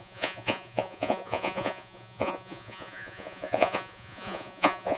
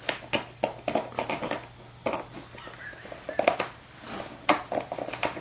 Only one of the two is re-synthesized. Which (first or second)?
first